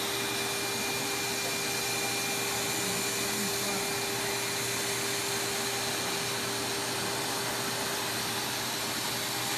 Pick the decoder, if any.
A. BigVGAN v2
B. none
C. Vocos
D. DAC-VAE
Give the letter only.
B